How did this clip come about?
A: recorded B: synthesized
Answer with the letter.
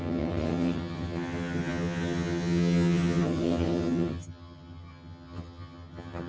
B